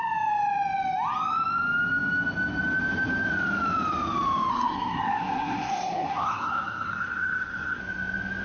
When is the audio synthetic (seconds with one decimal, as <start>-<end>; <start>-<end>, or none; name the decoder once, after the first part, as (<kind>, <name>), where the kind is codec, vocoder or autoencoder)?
4.5-7.8 (codec, SNAC)